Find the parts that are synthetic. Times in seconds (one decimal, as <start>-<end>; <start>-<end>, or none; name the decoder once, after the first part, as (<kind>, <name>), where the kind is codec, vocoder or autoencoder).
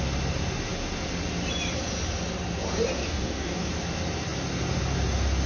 3.0-3.7 (codec, DAC)